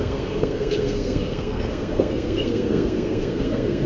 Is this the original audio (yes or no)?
no